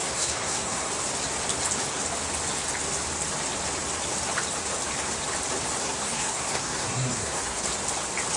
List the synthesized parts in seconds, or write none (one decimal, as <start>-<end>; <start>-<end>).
0.0-0.9; 5.8-7.6